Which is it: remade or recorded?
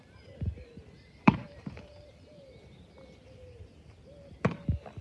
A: recorded